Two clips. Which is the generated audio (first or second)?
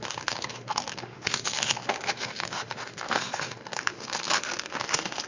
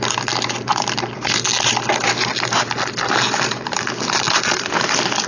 first